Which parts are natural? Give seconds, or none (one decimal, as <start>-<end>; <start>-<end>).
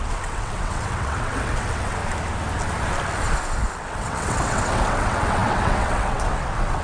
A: 2.0-3.8